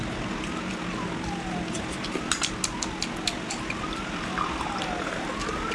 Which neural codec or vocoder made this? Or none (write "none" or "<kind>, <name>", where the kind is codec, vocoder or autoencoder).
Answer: none